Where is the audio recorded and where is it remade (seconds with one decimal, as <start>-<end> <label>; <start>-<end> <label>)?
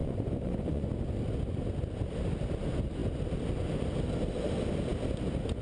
0.0-0.9 remade; 0.9-5.6 recorded